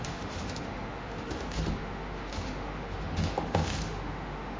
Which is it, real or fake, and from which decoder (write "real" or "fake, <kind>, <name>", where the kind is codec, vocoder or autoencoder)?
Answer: fake, autoencoder, DAC-VAE